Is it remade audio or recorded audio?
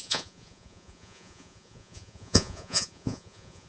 remade